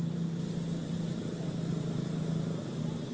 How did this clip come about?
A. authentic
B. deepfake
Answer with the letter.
A